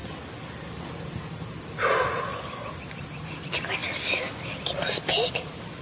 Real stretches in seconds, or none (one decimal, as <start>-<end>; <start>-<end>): 0.0-5.8